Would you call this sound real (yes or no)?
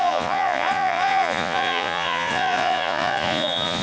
no